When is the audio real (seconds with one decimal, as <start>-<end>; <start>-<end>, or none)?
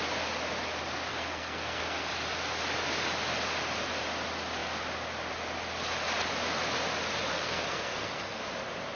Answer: 0.0-1.1; 2.1-7.3; 8.4-9.0